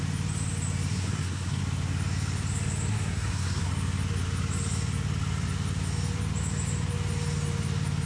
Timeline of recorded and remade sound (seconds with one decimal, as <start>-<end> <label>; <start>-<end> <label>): 0.0-0.9 recorded; 0.9-1.6 remade; 1.6-2.9 recorded; 2.9-3.7 remade; 3.7-8.1 recorded